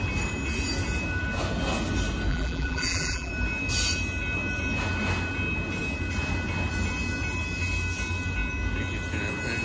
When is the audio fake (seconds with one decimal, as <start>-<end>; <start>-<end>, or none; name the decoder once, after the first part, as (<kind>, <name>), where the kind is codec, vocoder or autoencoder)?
2.3-3.3 (vocoder, BigVGAN v2)